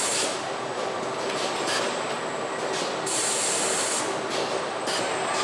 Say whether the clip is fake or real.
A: real